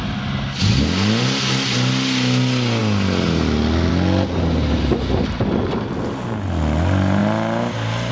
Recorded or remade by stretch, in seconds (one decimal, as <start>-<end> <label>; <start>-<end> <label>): 0.0-8.1 recorded

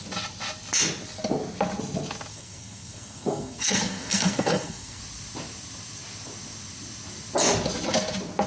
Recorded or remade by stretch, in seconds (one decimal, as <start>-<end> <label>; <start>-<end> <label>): 0.0-2.3 recorded; 2.3-5.0 remade; 5.0-8.5 recorded

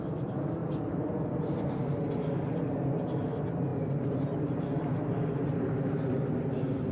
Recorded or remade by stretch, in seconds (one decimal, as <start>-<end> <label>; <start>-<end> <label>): 0.0-6.9 recorded

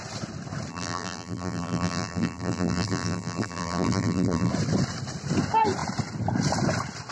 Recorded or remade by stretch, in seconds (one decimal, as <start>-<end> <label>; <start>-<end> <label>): 0.0-0.7 recorded; 0.7-4.5 remade; 4.5-7.1 recorded